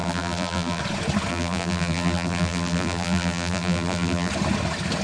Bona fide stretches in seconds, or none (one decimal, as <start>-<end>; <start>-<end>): 0.8-1.3; 4.3-5.0